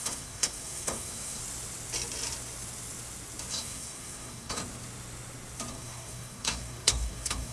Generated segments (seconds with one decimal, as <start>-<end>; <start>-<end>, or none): 0.0-1.4; 3.5-4.6; 5.7-7.5